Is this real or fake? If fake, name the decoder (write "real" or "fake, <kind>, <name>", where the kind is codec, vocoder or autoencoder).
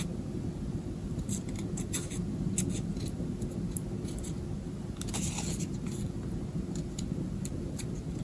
real